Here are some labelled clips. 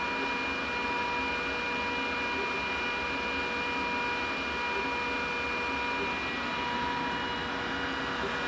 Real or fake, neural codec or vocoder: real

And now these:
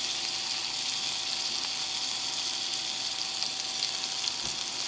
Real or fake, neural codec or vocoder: real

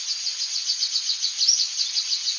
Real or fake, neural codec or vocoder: real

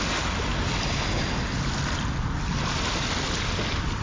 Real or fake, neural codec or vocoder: real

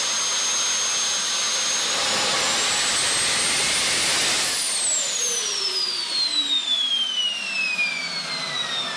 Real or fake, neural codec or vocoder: real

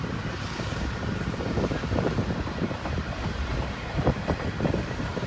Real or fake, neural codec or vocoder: fake, vocoder, BigVGAN v2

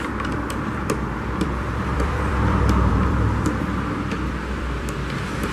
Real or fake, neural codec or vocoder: fake, vocoder, BigVGAN v2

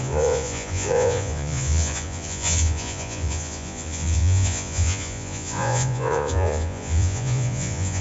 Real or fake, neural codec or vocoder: fake, vocoder, Vocos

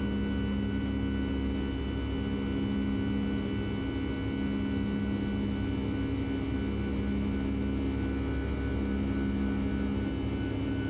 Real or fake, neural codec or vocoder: real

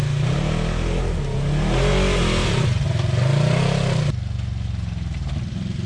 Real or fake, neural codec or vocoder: real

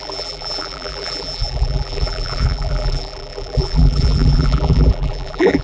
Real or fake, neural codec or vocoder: fake, vocoder, BigVGAN v2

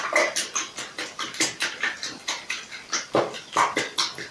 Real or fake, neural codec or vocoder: real